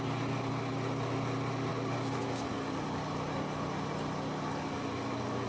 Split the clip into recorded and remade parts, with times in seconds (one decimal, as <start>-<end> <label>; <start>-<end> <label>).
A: 0.0-5.5 recorded